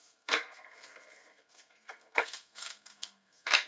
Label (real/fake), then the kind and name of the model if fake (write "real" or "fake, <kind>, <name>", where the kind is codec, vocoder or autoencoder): fake, codec, SNAC